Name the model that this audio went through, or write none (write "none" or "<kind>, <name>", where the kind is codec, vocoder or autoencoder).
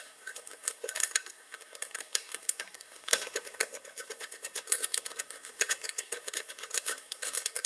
codec, SNAC